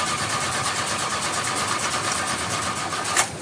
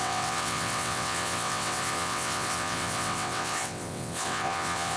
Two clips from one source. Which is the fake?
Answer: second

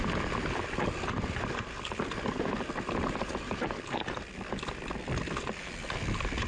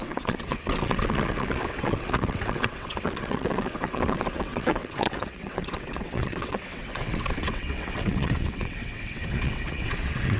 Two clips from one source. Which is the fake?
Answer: second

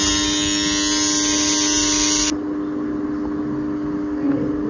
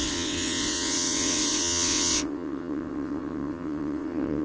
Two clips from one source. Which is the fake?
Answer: second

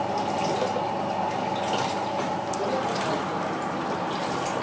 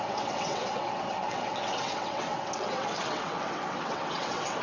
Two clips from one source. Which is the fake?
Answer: second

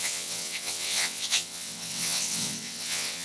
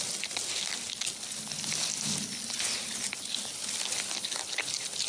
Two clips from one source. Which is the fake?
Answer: first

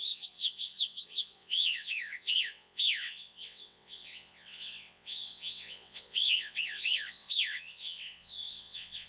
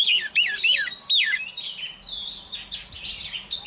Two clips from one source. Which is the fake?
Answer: first